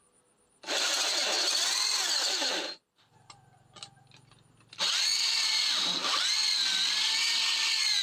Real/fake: real